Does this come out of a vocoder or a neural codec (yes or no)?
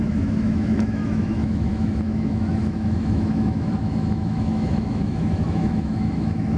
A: yes